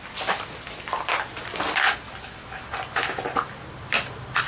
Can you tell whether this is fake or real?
real